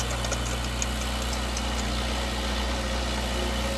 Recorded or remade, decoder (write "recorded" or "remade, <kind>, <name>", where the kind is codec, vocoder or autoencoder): recorded